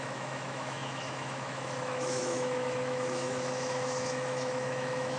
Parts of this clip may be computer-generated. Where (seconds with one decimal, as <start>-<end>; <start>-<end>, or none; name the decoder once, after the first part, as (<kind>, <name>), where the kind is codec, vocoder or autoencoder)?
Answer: 0.0-5.2 (autoencoder, DAC-VAE)